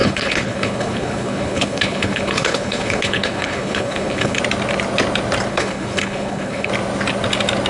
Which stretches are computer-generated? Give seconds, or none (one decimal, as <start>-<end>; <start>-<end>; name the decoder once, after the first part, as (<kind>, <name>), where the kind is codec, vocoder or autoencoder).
0.0-4.4 (codec, HILCodec); 5.5-6.7